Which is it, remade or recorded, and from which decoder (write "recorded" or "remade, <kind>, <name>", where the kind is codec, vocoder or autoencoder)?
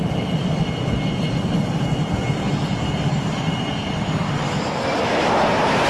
recorded